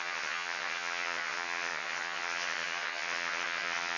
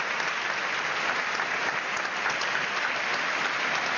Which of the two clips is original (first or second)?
second